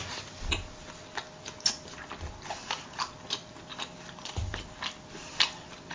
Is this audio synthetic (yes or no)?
no